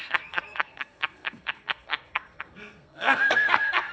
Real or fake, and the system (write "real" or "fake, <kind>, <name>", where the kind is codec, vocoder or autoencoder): fake, codec, SNAC